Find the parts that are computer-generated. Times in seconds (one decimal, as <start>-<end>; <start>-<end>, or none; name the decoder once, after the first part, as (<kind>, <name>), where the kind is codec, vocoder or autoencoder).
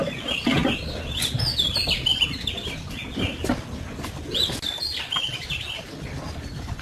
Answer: none